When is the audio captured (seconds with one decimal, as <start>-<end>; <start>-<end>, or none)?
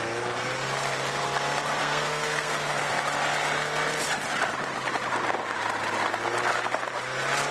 0.0-1.8; 2.9-7.5